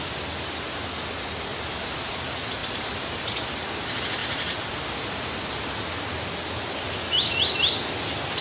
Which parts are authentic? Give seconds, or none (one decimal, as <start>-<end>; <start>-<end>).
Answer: 0.0-1.5; 2.2-2.6; 3.7-4.2; 4.8-8.4